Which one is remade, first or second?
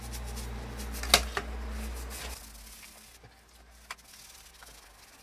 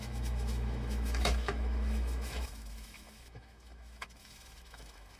second